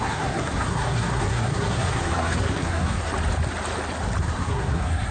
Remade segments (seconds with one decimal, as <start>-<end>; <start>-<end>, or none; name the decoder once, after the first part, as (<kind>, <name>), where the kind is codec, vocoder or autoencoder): 0.0-3.1 (codec, SNAC); 4.2-5.1